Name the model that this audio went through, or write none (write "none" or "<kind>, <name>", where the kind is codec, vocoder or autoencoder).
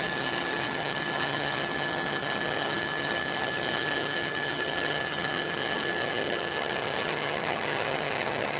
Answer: vocoder, HiFi-GAN